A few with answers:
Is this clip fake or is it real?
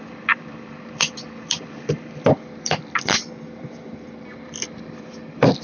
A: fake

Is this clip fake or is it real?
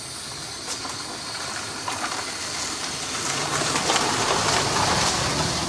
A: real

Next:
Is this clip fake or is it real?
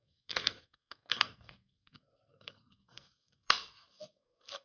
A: fake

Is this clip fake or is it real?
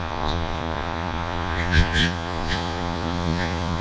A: fake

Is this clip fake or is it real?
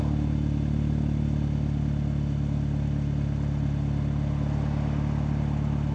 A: real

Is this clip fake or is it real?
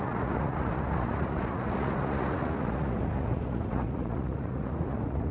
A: fake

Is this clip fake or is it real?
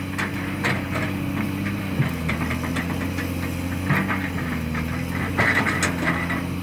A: real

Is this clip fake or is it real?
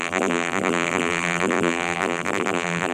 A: fake